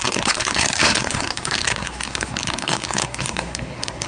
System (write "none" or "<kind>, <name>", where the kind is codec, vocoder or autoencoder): codec, SNAC